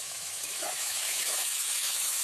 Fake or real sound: fake